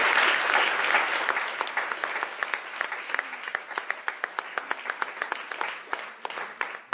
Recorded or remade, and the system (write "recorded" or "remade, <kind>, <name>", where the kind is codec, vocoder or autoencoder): recorded